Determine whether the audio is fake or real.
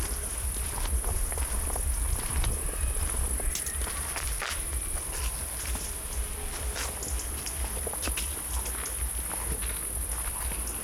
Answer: real